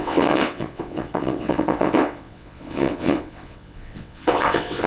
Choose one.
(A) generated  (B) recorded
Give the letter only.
A